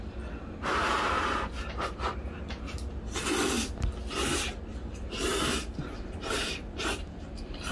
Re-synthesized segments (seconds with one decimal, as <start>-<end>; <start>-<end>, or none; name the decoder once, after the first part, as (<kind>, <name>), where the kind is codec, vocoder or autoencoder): 0.8-3.0 (vocoder, BigVGAN v2); 4.7-7.3